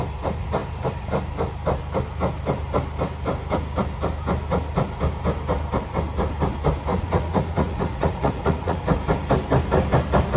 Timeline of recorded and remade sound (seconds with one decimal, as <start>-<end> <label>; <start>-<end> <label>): 0.0-6.9 recorded; 6.9-8.8 remade; 8.8-10.4 recorded